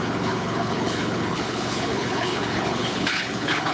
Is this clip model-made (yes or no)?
yes